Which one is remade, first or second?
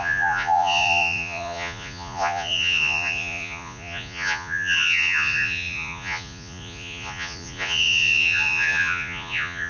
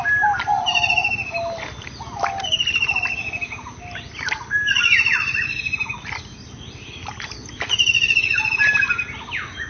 first